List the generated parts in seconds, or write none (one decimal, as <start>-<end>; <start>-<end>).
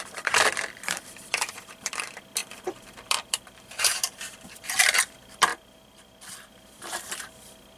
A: 0.0-2.4; 3.1-5.5; 6.5-7.8